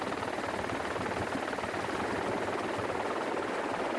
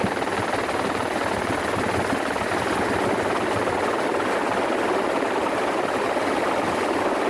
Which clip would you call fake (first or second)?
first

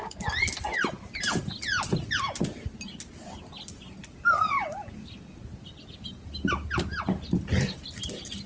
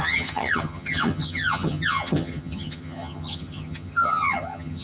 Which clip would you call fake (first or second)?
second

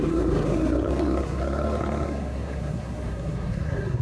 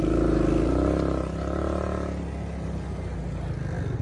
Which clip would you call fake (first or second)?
first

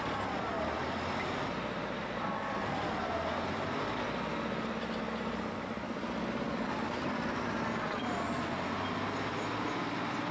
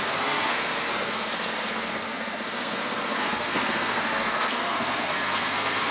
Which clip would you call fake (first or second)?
second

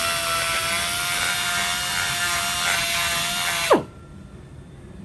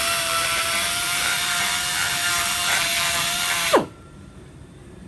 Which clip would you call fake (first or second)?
second